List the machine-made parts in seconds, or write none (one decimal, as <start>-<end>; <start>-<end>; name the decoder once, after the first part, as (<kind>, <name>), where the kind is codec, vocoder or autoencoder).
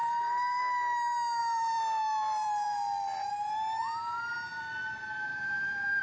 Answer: 0.0-0.6 (vocoder, BigVGAN v2); 1.4-4.2